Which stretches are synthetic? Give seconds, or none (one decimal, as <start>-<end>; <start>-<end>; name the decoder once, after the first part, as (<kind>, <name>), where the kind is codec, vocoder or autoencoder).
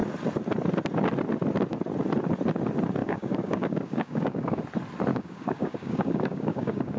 3.0-4.6 (codec, DAC); 5.1-7.0